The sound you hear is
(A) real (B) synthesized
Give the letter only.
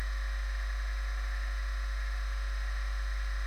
A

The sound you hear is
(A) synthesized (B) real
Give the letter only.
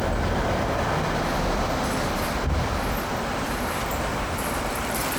A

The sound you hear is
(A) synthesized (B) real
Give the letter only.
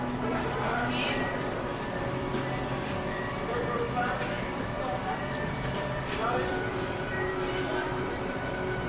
A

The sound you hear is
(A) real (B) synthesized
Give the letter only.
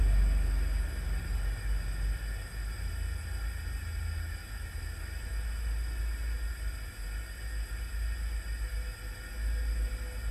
A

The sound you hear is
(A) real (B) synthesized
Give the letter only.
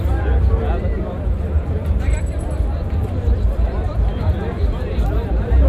B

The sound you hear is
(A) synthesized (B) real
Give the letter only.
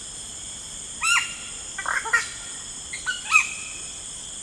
B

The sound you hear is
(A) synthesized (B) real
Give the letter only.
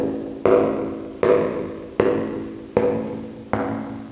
B